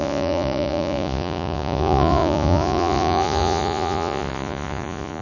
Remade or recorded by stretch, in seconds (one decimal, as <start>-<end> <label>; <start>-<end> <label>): 0.0-5.2 remade